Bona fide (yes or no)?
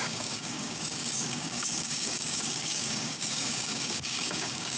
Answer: no